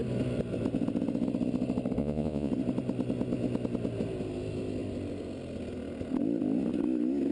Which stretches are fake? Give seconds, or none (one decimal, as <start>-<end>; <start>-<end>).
2.0-2.5